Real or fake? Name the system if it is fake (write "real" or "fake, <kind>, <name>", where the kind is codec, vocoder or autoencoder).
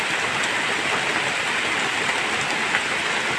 real